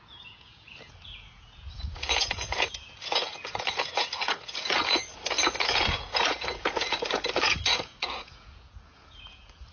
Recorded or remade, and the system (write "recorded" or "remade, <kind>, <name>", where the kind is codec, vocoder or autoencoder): remade, vocoder, Vocos